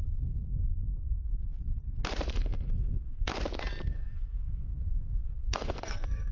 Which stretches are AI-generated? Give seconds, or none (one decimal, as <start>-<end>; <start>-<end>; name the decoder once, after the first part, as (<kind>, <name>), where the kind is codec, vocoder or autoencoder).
0.0-1.3 (codec, SNAC); 2.3-3.3; 3.9-6.3